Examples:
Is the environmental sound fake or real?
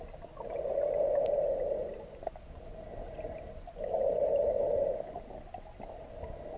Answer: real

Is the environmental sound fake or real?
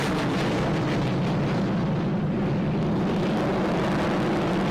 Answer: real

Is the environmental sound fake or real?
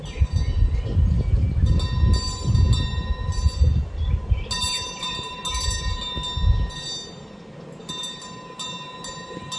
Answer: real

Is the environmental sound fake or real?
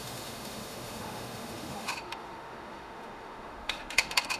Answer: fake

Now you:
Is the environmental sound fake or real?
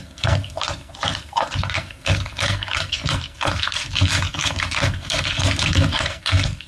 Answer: fake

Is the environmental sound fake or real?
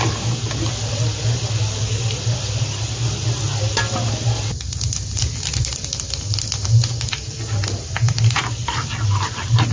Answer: real